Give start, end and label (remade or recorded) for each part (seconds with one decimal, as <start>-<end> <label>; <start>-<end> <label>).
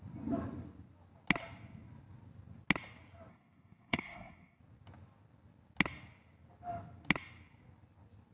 0.0-3.3 recorded; 3.3-4.6 remade; 4.6-8.3 recorded